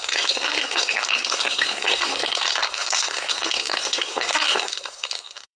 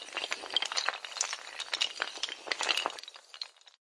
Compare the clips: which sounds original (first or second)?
second